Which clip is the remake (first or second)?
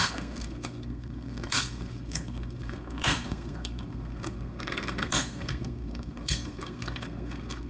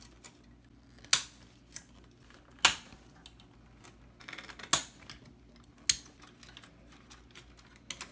first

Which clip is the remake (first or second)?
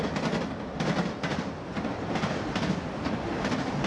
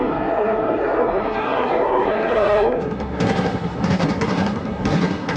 second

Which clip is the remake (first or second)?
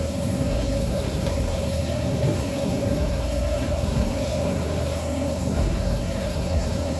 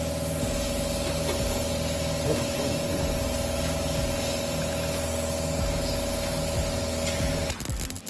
first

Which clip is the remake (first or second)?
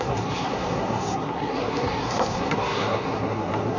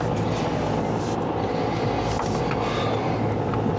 first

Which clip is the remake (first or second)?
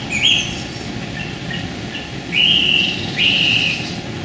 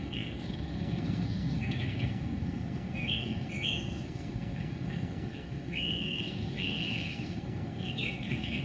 second